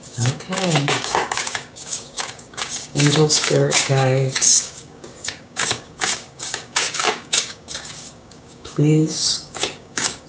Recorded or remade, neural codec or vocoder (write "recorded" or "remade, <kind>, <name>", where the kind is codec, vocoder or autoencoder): remade, codec, DAC